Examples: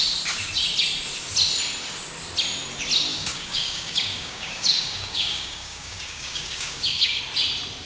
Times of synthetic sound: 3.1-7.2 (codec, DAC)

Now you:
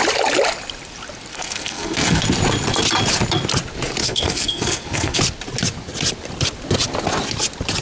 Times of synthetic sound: 1.3-2.2 (codec, SNAC); 4.0-5.2